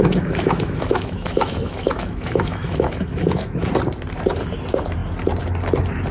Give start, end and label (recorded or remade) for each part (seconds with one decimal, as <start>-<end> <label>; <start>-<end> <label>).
0.0-3.7 remade; 3.7-6.1 recorded